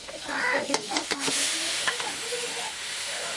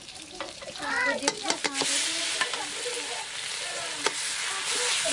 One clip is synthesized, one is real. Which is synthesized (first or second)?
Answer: first